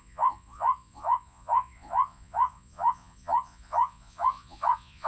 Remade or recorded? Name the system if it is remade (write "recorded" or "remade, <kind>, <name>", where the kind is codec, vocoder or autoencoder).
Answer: remade, vocoder, Vocos